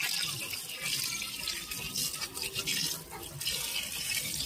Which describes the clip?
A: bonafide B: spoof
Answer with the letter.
A